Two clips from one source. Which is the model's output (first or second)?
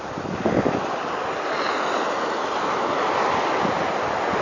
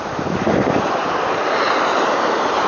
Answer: second